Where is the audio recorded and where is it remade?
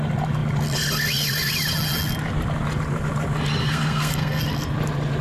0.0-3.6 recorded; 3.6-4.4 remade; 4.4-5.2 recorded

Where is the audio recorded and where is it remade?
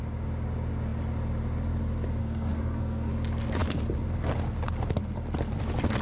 0.0-2.2 recorded; 2.2-3.1 remade; 3.1-6.0 recorded